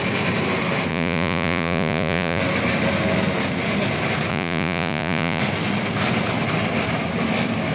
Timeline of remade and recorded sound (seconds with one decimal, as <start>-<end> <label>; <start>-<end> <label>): 0.0-0.9 recorded; 0.9-2.4 remade; 2.4-4.3 recorded; 4.3-5.4 remade; 5.4-7.7 recorded